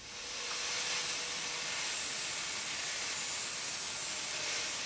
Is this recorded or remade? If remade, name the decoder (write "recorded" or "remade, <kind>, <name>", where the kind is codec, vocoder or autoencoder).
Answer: recorded